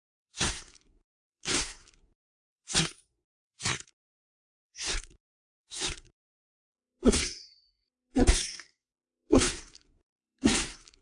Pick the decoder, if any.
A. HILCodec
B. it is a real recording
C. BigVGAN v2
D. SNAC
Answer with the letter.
D